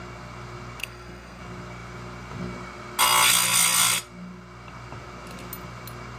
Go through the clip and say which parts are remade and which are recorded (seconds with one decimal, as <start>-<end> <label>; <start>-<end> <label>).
0.0-0.8 recorded; 0.8-1.4 remade; 1.4-6.2 recorded

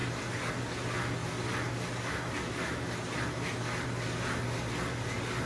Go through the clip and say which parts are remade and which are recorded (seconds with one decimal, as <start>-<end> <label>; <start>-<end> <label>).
0.0-0.5 remade; 0.5-5.5 recorded

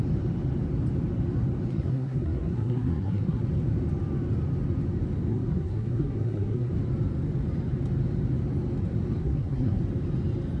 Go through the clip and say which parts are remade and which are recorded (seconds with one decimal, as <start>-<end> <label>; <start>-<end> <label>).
0.0-1.7 recorded; 1.7-3.4 remade; 3.4-5.3 recorded; 5.3-6.7 remade; 6.7-9.2 recorded; 9.2-9.8 remade; 9.8-10.6 recorded

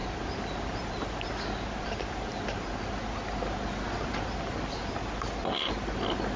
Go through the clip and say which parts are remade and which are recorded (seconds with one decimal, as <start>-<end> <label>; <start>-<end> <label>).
0.0-6.4 recorded